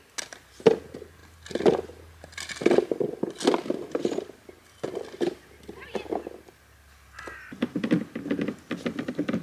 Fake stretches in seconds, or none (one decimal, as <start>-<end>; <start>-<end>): none